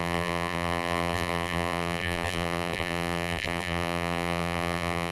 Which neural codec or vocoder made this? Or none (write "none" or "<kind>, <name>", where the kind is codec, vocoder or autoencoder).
vocoder, BigVGAN v2